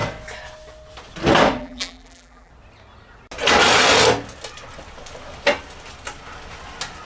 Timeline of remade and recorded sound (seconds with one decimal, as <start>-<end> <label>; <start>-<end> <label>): 0.0-1.6 recorded; 1.6-2.5 remade; 2.5-7.0 recorded